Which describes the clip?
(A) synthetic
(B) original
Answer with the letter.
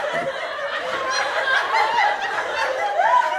B